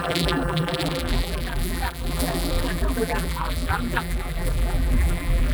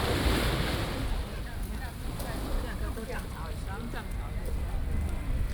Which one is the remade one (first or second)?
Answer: first